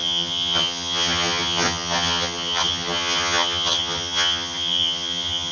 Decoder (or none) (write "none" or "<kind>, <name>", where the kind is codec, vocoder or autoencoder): vocoder, HiFi-GAN